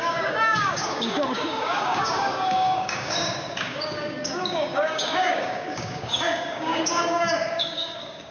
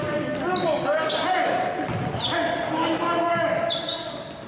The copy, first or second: first